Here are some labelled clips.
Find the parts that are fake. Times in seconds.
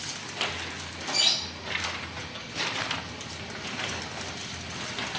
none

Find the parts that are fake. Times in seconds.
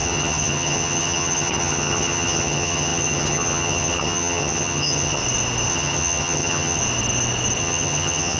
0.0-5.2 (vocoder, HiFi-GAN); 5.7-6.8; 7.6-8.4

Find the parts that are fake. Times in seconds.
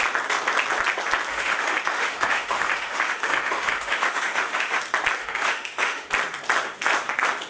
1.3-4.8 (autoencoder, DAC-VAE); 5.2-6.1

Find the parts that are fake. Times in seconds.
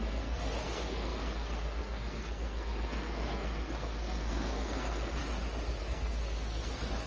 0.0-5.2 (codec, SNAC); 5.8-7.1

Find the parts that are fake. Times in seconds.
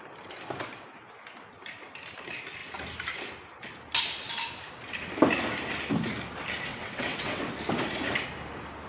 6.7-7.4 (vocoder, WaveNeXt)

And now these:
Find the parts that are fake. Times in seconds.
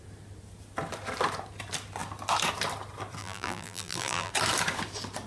3.2-4.3 (vocoder, BigVGAN v2)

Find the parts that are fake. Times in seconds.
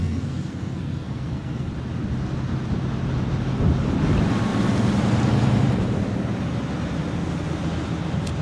0.0-1.7 (codec, SNAC)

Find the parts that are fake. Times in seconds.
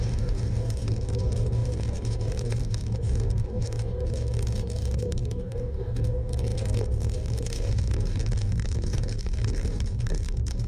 0.0-10.7 (codec, DAC)